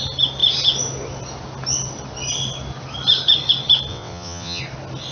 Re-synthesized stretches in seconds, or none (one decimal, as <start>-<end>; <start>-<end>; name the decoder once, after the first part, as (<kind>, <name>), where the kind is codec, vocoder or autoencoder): 3.9-4.6 (vocoder, WaveNeXt)